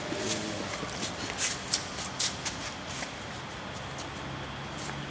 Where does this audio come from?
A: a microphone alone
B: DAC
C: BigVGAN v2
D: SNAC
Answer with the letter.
A